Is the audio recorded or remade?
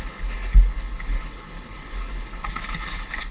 remade